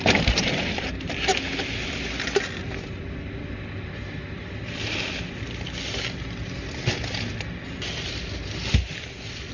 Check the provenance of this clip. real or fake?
real